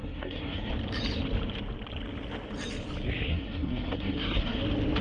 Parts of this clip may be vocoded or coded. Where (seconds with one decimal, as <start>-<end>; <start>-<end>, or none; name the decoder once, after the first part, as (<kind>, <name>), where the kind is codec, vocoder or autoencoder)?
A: 0.0-0.7 (codec, SNAC); 3.3-4.6